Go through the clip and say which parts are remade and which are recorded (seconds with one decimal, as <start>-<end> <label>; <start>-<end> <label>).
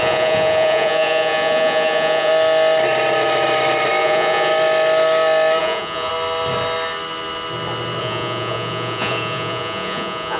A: 0.0-2.3 remade; 2.3-4.0 recorded; 4.0-4.5 remade; 4.5-5.6 recorded; 5.6-6.1 remade; 6.1-8.0 recorded; 8.0-10.4 remade